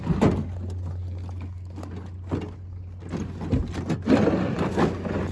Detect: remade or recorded recorded